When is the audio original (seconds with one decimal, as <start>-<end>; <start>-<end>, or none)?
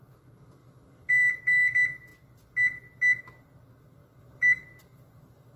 0.0-0.6; 1.4-4.0